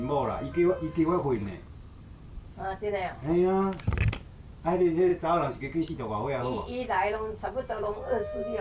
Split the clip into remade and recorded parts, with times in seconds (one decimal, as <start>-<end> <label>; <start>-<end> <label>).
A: 0.0-8.6 recorded